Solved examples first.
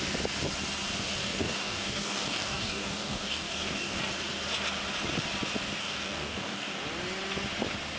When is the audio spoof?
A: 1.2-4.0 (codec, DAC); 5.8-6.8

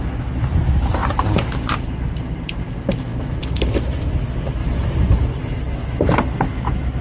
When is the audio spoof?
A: 1.0-2.3 (vocoder, BigVGAN v2); 3.1-4.1; 4.6-5.1

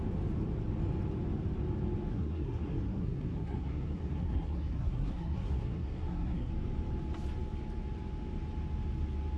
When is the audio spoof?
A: 2.1-6.5 (codec, SNAC)

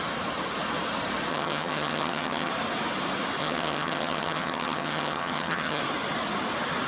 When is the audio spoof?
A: 1.3-2.5 (vocoder, HiFi-GAN); 3.4-5.8

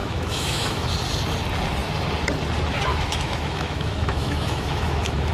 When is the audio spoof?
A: 0.0-0.9 (autoencoder, DAC-VAE); 2.9-5.3

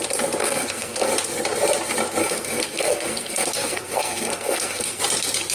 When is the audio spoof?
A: 0.4-1.1 (codec, SNAC); 2.2-5.0

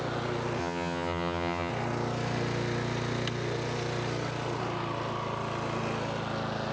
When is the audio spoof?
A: 0.6-1.7 (vocoder, HiFi-GAN)

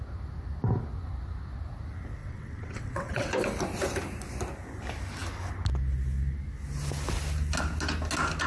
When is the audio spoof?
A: 2.2-3.3 (vocoder, WaveNeXt)